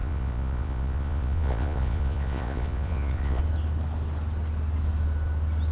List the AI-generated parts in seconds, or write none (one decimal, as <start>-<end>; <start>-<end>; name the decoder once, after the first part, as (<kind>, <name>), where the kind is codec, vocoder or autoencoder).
0.0-3.4 (vocoder, Vocos)